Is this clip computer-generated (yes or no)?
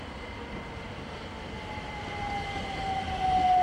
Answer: no